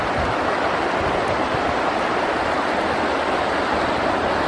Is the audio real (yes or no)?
yes